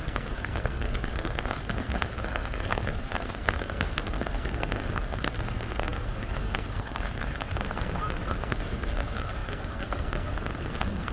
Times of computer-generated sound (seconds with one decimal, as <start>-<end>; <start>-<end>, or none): 0.0-11.1